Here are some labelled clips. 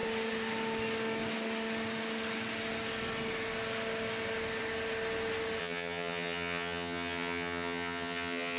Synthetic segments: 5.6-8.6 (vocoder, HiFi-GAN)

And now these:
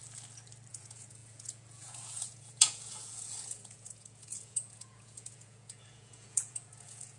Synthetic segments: 0.7-7.2 (vocoder, Vocos)

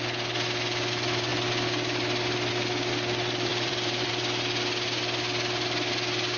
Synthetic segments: 3.5-4.1 (vocoder, BigVGAN v2)

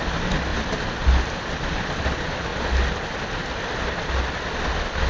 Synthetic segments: none